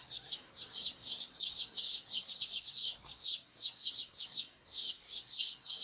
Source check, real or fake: fake